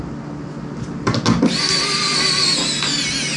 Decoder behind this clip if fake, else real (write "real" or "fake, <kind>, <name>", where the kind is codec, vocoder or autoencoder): real